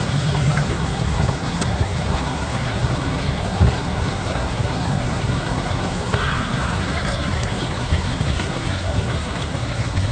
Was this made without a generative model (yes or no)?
no